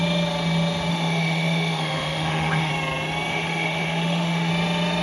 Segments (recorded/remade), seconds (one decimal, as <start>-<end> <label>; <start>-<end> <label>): 0.0-0.9 recorded; 0.9-2.7 remade; 2.7-3.3 recorded; 3.3-4.5 remade; 4.5-5.0 recorded